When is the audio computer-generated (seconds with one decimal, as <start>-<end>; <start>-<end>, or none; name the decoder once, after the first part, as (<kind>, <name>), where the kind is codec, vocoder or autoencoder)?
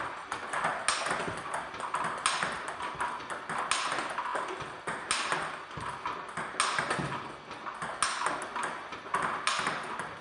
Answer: none